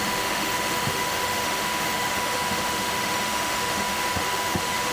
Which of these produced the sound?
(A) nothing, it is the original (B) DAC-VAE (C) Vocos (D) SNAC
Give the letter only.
B